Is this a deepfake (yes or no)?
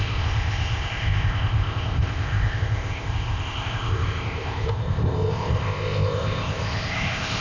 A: yes